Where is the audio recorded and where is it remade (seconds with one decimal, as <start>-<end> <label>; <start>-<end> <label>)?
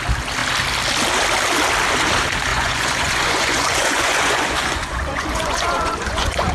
0.0-2.5 recorded; 2.5-6.5 remade